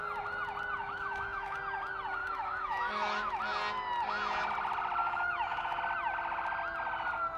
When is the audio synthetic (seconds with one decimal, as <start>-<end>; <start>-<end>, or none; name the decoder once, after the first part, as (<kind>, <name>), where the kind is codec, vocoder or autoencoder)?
0.8-1.6 (autoencoder, DAC-VAE); 2.2-3.4; 5.0-5.8